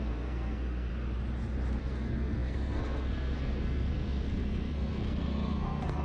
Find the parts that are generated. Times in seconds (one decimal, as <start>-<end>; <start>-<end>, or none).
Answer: 0.0-0.9; 1.8-6.0